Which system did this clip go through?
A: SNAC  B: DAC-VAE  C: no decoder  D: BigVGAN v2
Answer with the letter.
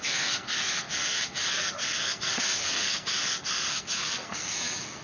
A